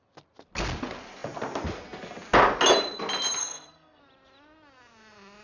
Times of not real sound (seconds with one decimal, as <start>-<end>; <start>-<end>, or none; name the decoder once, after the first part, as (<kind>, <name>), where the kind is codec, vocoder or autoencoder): 3.4-4.0 (codec, SNAC)